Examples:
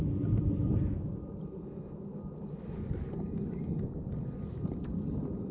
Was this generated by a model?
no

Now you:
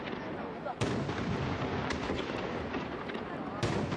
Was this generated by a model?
no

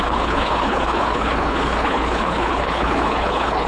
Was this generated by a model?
yes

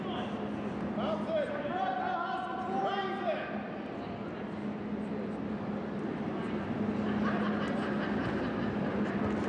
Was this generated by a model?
no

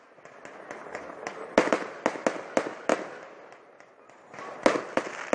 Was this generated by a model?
no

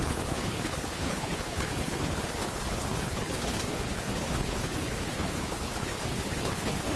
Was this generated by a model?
yes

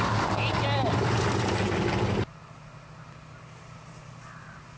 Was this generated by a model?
no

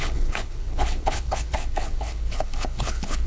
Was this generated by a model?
yes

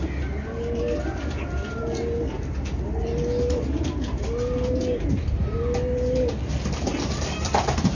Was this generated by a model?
no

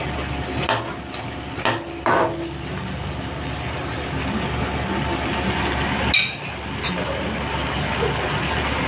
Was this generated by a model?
no